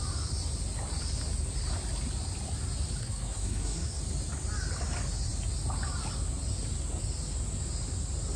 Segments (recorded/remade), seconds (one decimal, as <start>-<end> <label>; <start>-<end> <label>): 0.0-3.0 recorded; 3.0-4.0 remade; 4.0-8.4 recorded